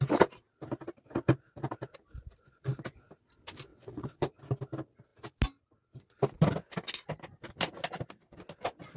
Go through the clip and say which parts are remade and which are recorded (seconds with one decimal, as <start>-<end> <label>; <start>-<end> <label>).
0.0-3.7 recorded; 3.7-4.4 remade; 4.4-9.0 recorded